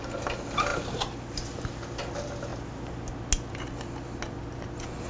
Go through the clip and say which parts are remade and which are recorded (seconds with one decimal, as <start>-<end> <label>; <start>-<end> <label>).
0.0-5.1 recorded